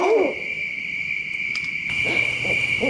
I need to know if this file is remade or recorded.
recorded